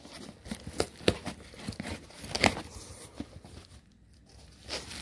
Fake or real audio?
real